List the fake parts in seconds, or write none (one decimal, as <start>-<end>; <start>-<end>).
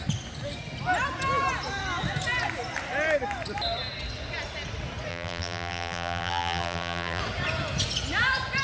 5.1-7.2